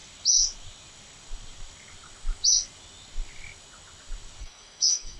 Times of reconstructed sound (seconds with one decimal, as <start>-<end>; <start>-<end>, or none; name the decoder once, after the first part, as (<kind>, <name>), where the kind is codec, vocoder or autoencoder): 4.4-5.2 (codec, SNAC)